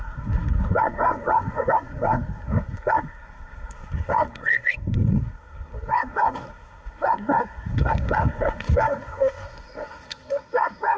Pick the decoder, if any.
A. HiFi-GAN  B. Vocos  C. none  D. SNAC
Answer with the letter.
D